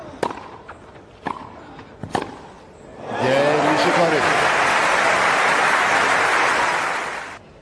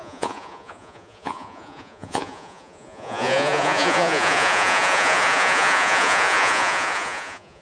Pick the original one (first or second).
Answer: first